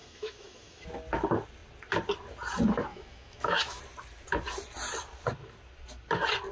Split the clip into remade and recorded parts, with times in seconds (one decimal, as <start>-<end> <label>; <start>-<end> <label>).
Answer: 0.0-0.9 remade; 0.9-2.9 recorded; 2.9-3.8 remade; 3.8-6.5 recorded